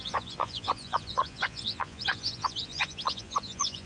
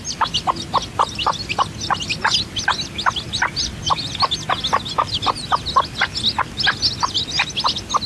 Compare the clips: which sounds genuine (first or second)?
second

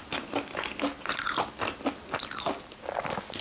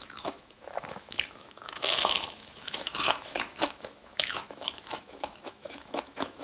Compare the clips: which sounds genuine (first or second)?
first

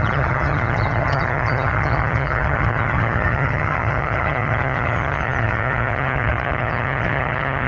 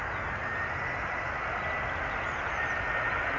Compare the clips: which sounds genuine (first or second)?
second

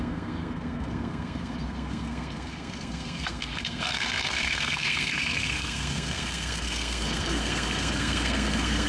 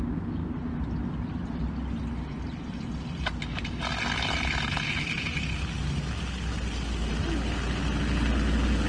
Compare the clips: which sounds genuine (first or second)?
second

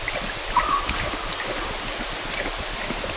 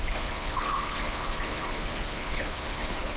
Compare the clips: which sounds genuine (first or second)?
first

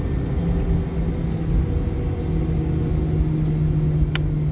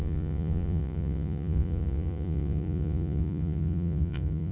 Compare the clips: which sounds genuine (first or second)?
first